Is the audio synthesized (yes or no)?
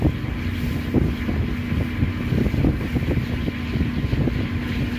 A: no